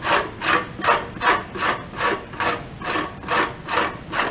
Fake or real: real